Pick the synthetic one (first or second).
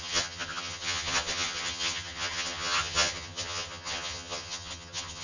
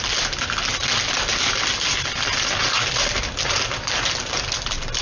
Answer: first